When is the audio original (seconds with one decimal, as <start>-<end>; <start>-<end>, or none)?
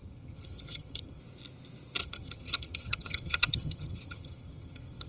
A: 1.2-2.0